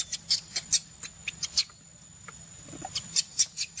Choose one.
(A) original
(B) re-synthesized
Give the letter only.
A